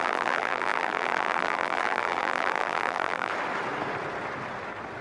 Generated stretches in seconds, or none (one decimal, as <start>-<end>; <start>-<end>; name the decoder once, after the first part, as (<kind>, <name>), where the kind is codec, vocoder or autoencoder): 0.0-3.3 (vocoder, BigVGAN v2)